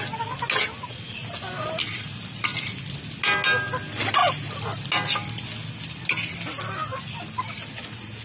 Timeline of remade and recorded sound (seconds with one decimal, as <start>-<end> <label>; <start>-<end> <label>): 0.0-8.2 recorded